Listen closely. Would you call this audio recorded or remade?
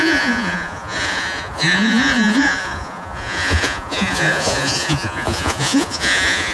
remade